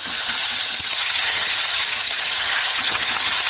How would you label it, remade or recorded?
remade